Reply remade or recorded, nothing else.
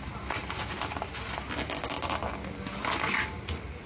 recorded